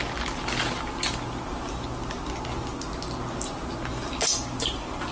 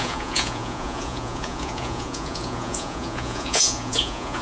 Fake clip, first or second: second